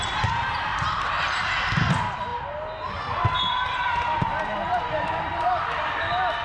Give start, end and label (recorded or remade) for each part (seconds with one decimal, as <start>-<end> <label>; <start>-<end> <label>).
0.0-0.7 recorded; 0.7-1.2 remade; 1.2-4.3 recorded; 4.3-5.5 remade; 5.5-6.4 recorded